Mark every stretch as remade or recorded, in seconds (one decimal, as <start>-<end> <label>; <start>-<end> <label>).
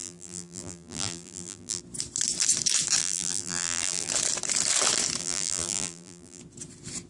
0.0-1.8 remade; 1.8-3.0 recorded; 3.0-4.1 remade; 4.1-5.2 recorded; 5.2-6.4 remade; 6.4-7.1 recorded